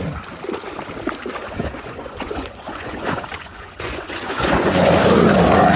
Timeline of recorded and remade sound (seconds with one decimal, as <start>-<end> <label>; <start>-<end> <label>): 0.0-1.4 recorded; 1.4-4.9 remade; 4.9-5.8 recorded